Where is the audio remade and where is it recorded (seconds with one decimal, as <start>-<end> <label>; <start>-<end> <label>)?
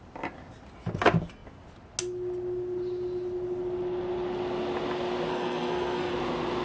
0.0-5.3 recorded; 5.3-6.1 remade; 6.1-6.6 recorded